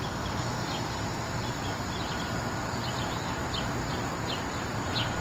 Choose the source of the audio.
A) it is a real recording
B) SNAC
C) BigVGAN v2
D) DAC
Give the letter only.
C